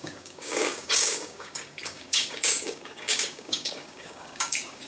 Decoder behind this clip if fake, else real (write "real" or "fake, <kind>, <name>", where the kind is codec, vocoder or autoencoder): fake, codec, DAC